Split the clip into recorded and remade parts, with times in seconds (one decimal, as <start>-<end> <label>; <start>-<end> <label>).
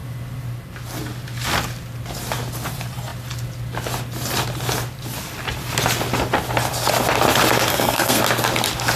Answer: 0.0-7.7 recorded; 7.7-8.2 remade; 8.2-9.0 recorded